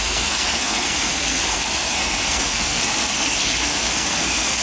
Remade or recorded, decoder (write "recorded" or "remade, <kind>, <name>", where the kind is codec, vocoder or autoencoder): remade, codec, SNAC